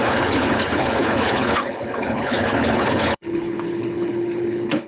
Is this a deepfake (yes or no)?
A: yes